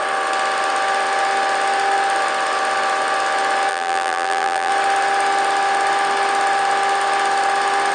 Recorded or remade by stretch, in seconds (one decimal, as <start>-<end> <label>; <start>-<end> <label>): 0.0-3.7 recorded; 3.7-4.7 remade; 4.7-7.9 recorded